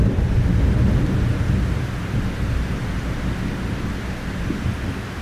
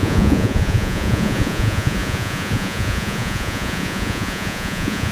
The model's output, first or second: second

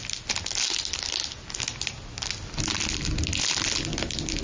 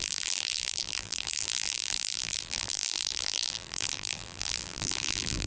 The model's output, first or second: second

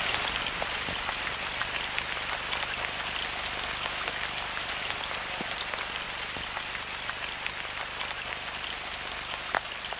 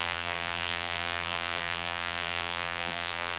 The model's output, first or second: second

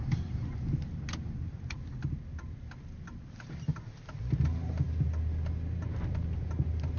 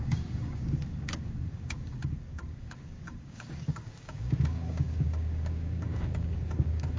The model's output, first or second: second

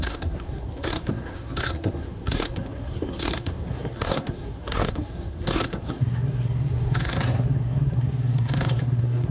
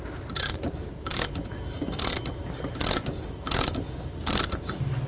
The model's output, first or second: first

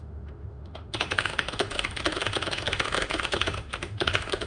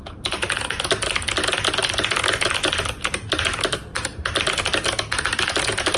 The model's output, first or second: first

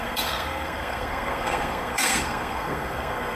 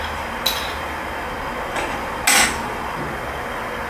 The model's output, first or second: first